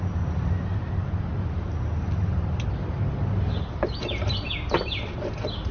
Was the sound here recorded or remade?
recorded